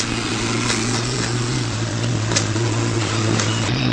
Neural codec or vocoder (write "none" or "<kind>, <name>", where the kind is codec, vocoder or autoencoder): vocoder, Vocos